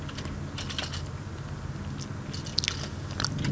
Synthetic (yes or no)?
no